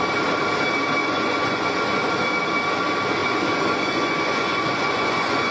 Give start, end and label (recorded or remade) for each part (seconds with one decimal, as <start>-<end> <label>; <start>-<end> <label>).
0.0-1.0 recorded; 1.0-2.1 remade; 2.1-3.2 recorded; 3.2-5.5 remade